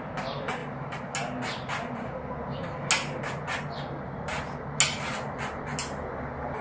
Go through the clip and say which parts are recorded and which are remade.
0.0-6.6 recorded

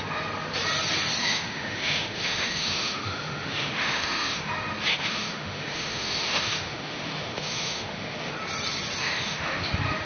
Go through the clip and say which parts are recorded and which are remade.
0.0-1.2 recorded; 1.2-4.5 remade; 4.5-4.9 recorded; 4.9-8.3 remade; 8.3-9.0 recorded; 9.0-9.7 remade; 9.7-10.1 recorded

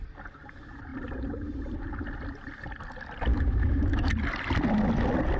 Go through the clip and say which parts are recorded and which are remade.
0.0-3.3 recorded; 3.3-4.1 remade; 4.1-5.4 recorded

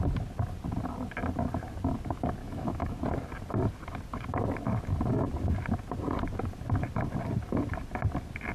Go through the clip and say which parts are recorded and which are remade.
0.0-2.4 recorded; 2.4-3.0 remade; 3.0-8.5 recorded